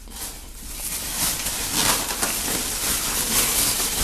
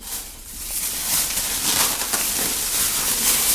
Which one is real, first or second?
first